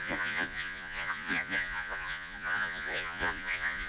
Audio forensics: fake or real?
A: fake